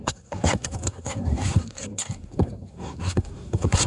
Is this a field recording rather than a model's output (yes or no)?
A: no